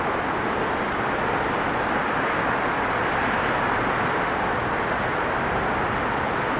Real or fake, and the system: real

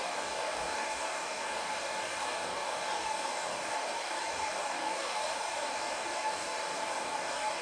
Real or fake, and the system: fake, codec, DAC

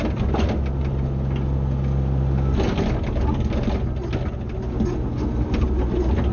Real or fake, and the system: real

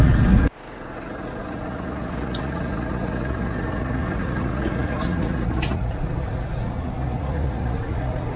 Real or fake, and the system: fake, vocoder, Vocos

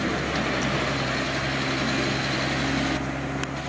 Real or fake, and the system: real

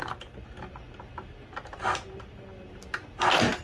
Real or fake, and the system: real